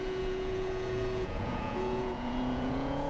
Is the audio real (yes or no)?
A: no